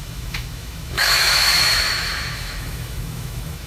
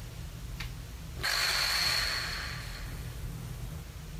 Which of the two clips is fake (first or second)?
first